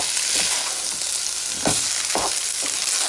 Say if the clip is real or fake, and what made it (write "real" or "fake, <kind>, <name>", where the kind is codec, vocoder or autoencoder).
real